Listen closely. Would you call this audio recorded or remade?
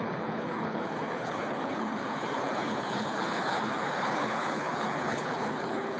remade